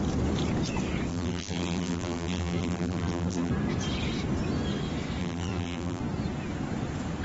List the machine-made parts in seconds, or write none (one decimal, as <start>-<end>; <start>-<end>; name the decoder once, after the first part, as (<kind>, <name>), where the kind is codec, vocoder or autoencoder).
1.1-3.5 (vocoder, BigVGAN v2); 5.2-6.0